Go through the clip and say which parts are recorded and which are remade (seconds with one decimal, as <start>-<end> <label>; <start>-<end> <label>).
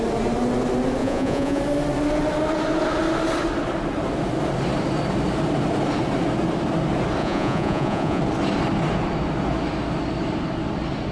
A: 0.0-1.0 recorded; 1.0-1.6 remade; 1.6-7.2 recorded; 7.2-8.2 remade; 8.2-11.1 recorded